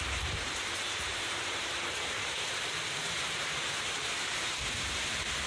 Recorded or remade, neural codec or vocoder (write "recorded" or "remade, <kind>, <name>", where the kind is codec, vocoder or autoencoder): remade, vocoder, BigVGAN v2